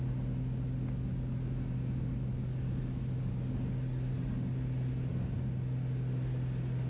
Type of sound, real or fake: real